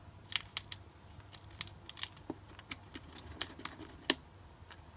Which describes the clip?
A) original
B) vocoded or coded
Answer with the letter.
A